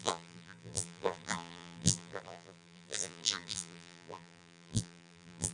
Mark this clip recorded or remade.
remade